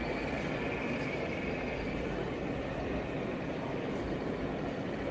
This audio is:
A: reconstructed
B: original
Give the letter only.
B